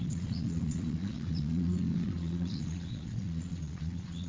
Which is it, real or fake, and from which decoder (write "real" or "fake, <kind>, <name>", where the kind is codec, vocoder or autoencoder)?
fake, vocoder, Vocos